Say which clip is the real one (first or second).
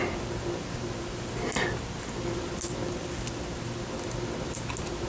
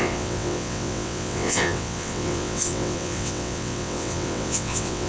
first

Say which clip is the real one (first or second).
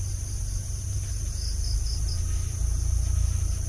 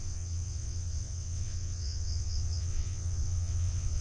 first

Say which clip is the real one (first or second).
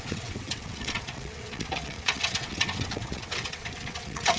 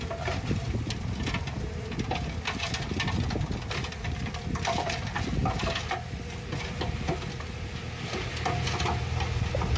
second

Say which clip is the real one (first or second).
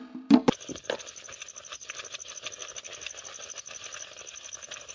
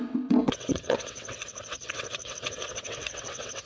first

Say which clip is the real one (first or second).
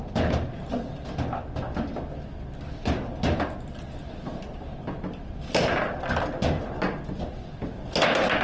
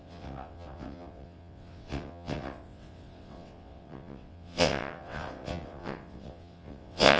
first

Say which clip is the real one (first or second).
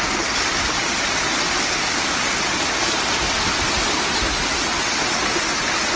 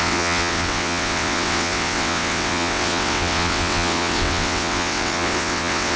first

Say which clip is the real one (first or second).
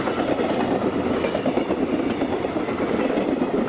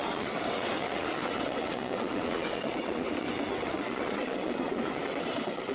first